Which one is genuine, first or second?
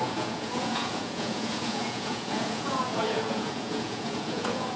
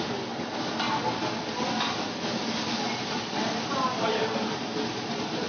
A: second